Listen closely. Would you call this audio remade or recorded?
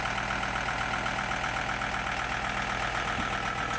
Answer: recorded